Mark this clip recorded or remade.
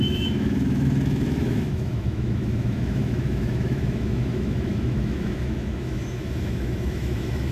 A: remade